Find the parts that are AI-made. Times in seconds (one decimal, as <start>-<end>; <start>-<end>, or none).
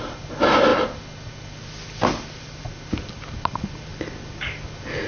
none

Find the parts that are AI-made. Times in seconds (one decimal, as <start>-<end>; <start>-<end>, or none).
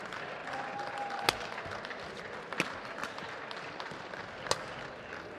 none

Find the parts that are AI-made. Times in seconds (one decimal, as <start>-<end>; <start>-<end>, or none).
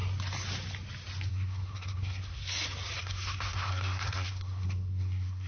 1.3-2.4; 3.0-5.5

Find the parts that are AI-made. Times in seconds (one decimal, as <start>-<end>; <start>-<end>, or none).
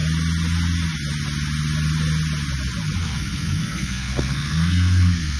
3.0-5.4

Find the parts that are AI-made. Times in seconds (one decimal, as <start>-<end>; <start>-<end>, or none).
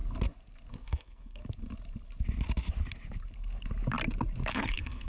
0.7-1.4; 4.5-5.1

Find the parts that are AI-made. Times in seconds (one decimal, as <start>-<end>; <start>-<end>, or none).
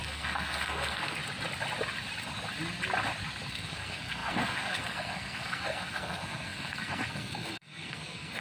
0.0-1.2; 3.5-8.4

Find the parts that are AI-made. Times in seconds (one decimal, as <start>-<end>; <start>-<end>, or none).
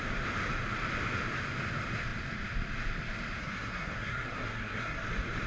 3.4-5.0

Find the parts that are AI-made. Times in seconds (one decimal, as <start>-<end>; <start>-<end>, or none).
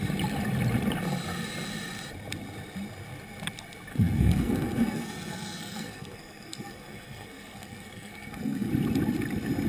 3.9-8.7